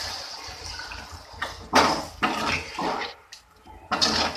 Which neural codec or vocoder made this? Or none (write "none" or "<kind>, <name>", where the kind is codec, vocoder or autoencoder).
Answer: none